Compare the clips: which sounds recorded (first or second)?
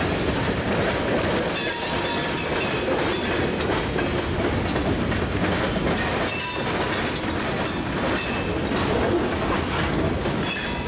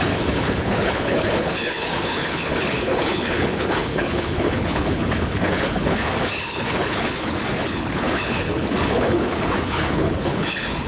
first